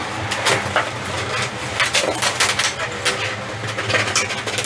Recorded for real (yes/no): yes